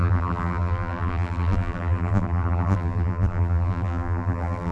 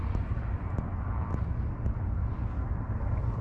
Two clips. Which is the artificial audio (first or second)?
first